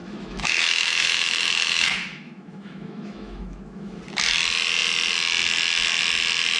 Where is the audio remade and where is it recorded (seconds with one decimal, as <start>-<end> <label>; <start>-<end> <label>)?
0.0-4.0 remade; 4.0-6.6 recorded